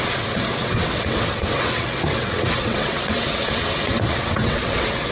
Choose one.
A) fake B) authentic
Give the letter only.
A